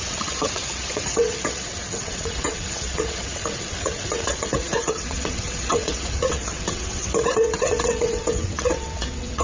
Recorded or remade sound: remade